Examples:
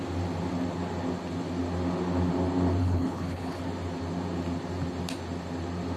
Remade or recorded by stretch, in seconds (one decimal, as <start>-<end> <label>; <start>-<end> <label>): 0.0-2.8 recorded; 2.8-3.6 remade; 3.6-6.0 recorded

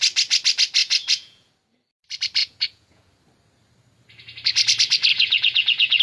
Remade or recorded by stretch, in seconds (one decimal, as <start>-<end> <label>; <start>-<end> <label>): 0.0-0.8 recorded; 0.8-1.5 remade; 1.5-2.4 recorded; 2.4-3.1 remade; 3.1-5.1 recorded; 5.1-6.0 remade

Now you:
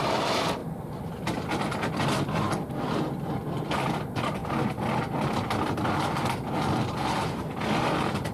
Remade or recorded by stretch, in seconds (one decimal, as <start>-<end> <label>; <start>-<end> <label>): 0.0-0.6 recorded; 0.6-1.9 remade; 1.9-8.3 recorded